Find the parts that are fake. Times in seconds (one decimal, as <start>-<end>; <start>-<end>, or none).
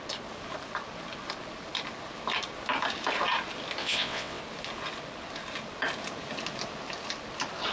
3.8-4.4